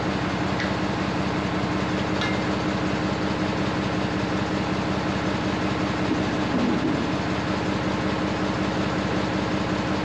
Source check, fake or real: real